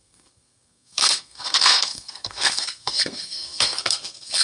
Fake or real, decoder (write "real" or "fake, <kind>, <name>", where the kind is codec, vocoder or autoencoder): fake, codec, SNAC